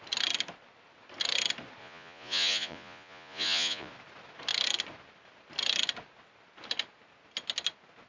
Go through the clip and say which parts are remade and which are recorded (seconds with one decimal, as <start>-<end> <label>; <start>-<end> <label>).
0.0-1.8 recorded; 1.8-3.9 remade; 3.9-8.1 recorded